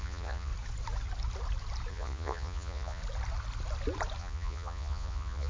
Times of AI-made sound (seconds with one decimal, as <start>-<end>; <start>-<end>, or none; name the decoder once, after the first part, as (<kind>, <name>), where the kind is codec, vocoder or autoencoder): 0.0-0.5 (vocoder, Vocos); 1.9-3.0; 4.2-5.5